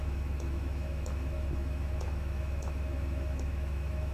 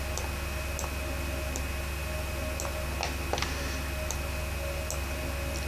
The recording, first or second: second